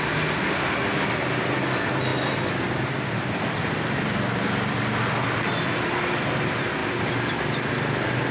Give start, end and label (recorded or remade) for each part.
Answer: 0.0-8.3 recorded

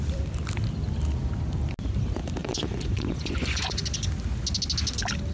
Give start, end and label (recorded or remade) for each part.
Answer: 0.0-2.4 recorded; 2.4-3.8 remade; 3.8-5.3 recorded

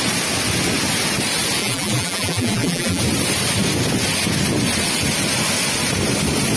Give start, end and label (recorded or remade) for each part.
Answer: 0.0-1.6 recorded; 1.6-3.0 remade; 3.0-6.6 recorded

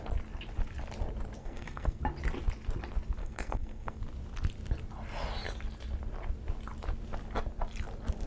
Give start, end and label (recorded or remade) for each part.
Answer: 0.0-1.4 recorded; 1.4-2.0 remade; 2.0-3.2 recorded; 3.2-4.0 remade; 4.0-8.3 recorded